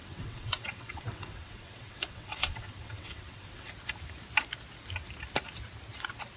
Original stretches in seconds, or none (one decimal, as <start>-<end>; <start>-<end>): 3.7-6.4